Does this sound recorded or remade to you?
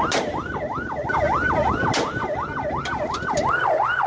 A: recorded